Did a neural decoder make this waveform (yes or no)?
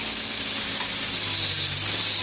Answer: no